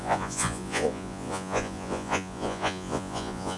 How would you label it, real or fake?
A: fake